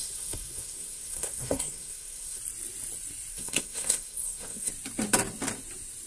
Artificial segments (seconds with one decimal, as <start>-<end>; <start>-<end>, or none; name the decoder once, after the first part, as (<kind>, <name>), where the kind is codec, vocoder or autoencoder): 0.0-2.4 (codec, SNAC); 3.3-4.7